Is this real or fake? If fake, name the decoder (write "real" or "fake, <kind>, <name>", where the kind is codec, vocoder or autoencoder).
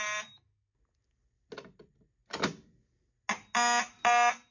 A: real